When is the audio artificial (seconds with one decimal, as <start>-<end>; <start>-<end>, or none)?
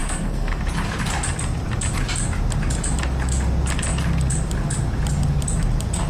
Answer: 0.0-0.6